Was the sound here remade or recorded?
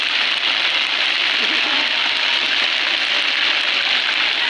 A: recorded